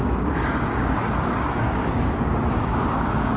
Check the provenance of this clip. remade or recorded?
remade